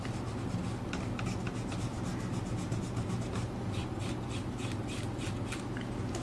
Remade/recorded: recorded